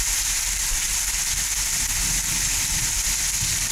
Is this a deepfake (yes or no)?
no